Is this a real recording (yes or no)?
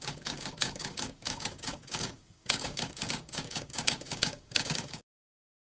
no